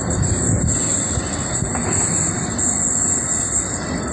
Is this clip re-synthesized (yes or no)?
no